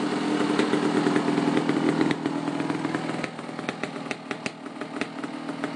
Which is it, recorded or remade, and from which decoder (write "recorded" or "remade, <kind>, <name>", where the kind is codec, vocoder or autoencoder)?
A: recorded